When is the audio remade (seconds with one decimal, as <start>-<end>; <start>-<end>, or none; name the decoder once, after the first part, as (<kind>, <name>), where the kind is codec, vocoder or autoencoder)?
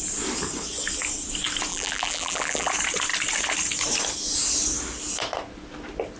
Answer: 1.7-2.7 (vocoder, BigVGAN v2)